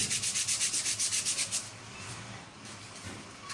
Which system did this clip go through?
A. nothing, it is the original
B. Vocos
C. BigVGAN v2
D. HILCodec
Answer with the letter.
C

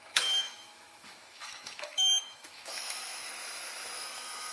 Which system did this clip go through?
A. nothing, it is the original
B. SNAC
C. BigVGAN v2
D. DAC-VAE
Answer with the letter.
D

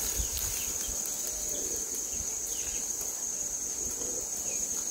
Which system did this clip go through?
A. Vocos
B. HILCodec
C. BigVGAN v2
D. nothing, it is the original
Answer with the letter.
D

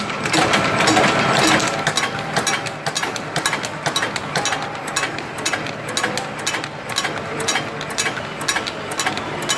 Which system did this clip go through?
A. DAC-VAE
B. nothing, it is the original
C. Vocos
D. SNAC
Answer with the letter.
B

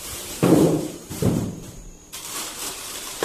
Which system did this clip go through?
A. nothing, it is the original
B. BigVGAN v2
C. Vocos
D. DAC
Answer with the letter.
B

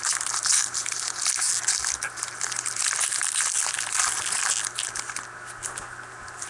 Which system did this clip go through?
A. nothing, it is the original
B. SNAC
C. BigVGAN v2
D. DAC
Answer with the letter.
A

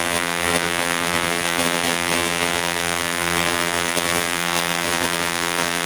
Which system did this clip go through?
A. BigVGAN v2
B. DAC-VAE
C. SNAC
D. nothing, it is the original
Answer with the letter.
A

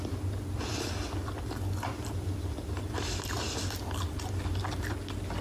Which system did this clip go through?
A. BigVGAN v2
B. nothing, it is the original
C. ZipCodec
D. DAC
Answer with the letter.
B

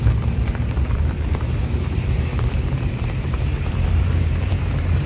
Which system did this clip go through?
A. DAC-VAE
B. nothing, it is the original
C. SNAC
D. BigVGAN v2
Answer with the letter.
D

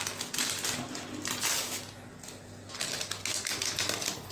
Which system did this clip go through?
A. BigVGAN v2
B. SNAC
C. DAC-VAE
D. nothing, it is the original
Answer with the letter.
D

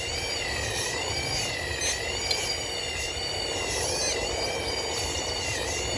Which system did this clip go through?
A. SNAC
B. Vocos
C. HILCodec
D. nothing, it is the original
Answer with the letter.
D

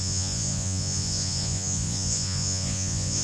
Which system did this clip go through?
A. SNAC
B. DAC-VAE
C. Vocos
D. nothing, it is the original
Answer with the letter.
C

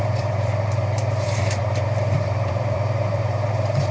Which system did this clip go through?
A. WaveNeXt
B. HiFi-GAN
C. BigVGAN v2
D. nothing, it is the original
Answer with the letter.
C